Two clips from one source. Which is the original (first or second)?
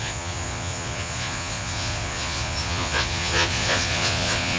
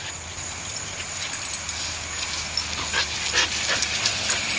second